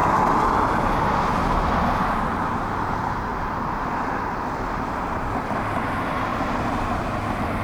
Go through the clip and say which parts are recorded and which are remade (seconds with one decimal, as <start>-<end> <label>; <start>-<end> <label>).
0.0-3.3 recorded; 3.3-5.3 remade; 5.3-6.3 recorded; 6.3-7.0 remade; 7.0-7.6 recorded